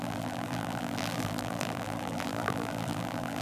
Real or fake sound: fake